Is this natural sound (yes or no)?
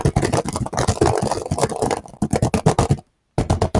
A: yes